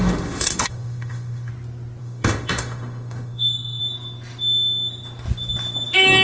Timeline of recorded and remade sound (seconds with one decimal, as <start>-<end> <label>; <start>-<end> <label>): 0.0-1.5 remade; 1.5-2.0 recorded; 2.0-3.8 remade; 3.8-6.2 recorded